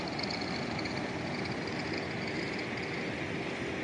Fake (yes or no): no